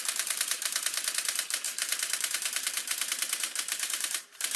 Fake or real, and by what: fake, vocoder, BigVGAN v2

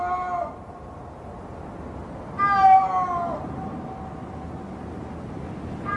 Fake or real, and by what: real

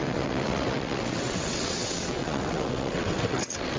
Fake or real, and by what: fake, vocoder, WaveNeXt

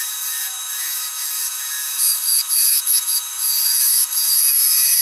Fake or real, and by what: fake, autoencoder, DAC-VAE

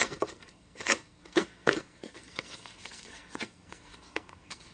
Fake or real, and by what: fake, codec, SNAC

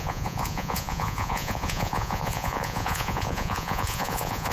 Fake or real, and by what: fake, vocoder, Vocos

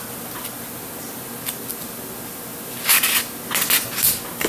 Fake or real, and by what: real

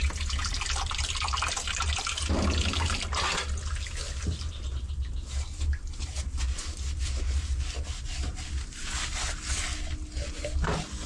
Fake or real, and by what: real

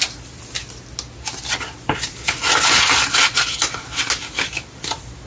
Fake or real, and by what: real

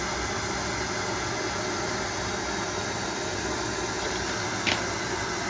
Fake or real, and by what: real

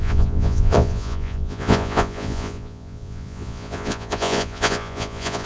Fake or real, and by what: fake, vocoder, Vocos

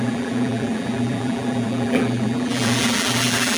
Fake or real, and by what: fake, vocoder, BigVGAN v2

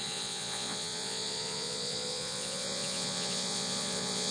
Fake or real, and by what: fake, vocoder, Vocos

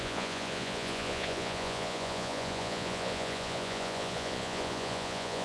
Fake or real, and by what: fake, vocoder, Vocos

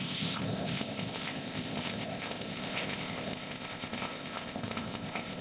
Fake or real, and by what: fake, codec, ZipCodec